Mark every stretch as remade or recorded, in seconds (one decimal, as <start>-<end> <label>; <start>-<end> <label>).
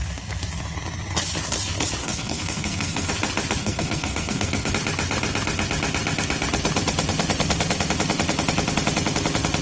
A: 0.0-2.0 recorded; 2.0-3.1 remade; 3.1-3.6 recorded; 3.6-4.7 remade; 4.7-9.6 recorded